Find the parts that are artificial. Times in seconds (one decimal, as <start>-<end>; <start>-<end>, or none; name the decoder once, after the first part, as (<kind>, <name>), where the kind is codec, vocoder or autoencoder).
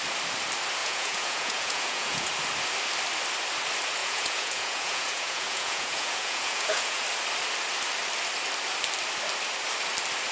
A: 0.8-2.3 (vocoder, Vocos); 4.0-7.0